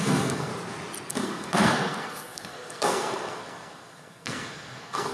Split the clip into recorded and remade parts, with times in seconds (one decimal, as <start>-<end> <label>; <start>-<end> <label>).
0.0-0.5 remade; 0.5-1.1 recorded; 1.1-5.1 remade